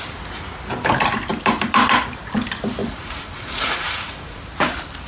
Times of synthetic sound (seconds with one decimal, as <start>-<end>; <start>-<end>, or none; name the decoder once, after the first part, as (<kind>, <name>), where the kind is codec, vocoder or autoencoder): 2.8-4.4 (vocoder, Vocos)